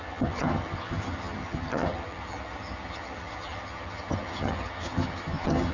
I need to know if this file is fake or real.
fake